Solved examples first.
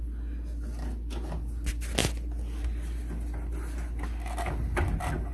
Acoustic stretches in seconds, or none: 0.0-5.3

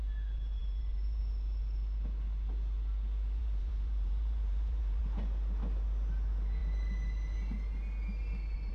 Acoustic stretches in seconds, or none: 0.0-0.6; 1.2-3.4; 5.0-8.7

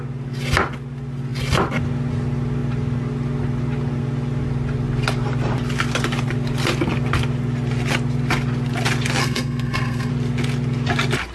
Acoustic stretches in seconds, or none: 0.0-9.2; 10.1-11.3

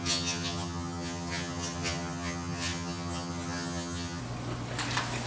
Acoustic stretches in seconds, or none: 4.2-5.3